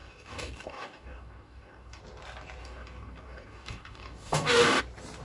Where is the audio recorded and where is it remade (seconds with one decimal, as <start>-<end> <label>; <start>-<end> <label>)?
0.0-2.0 remade; 2.0-2.6 recorded; 2.6-4.8 remade; 4.8-5.2 recorded